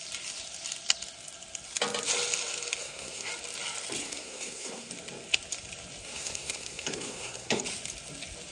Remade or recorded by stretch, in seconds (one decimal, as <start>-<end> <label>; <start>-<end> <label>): 0.0-2.8 recorded; 2.8-3.3 remade; 3.3-4.0 recorded; 4.0-4.9 remade; 4.9-6.0 recorded; 6.0-7.6 remade; 7.6-8.5 recorded